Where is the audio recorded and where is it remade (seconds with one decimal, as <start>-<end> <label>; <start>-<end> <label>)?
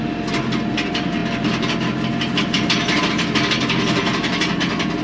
0.0-5.0 recorded